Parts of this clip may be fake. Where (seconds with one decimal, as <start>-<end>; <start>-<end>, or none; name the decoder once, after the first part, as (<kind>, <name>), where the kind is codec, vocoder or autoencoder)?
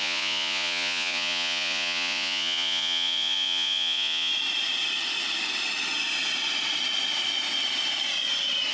0.0-4.3 (vocoder, Vocos)